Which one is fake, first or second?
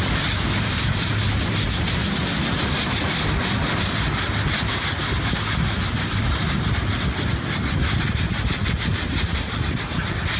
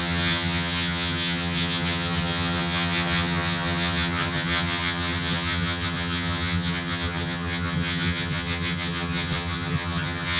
second